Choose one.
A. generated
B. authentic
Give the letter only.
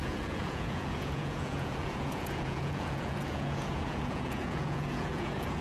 A